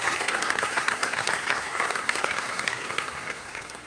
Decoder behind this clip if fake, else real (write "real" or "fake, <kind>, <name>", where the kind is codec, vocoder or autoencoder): fake, codec, SNAC